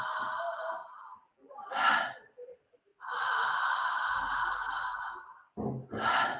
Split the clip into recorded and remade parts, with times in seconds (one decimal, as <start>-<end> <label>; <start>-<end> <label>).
0.0-0.8 recorded; 0.8-1.5 remade; 1.5-6.4 recorded